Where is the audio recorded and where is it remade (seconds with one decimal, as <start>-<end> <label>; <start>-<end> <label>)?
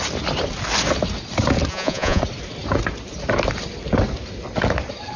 0.0-1.7 recorded; 1.7-2.2 remade; 2.2-5.2 recorded